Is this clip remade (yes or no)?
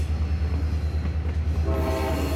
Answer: no